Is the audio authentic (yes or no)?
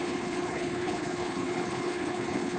no